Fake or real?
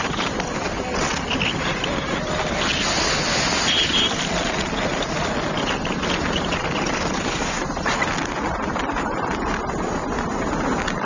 real